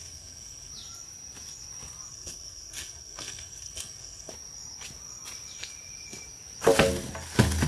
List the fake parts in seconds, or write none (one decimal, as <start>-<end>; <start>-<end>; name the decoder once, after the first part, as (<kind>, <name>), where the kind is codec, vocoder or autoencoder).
0.0-0.7 (codec, SNAC); 2.1-4.3